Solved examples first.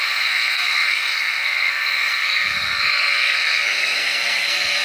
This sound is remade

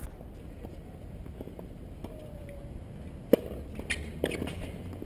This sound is recorded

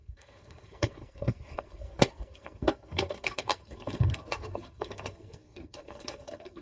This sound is remade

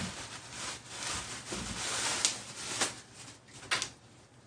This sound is recorded